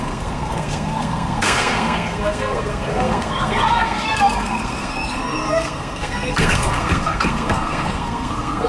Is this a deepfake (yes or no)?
yes